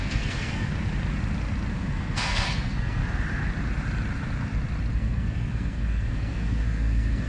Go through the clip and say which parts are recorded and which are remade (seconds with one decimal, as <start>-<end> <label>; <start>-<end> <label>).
0.0-0.7 remade; 0.7-1.7 recorded; 1.7-3.0 remade; 3.0-4.9 recorded; 4.9-7.3 remade